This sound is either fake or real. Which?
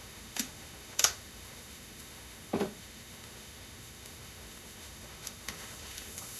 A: fake